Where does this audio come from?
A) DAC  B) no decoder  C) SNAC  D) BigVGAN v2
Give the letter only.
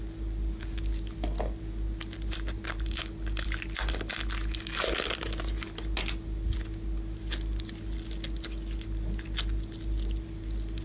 B